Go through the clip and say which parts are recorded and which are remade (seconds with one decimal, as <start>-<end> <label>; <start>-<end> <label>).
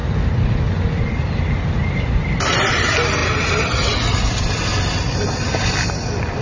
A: 0.0-6.4 recorded